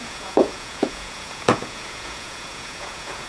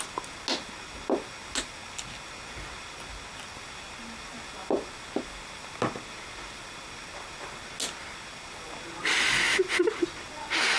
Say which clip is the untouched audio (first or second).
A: second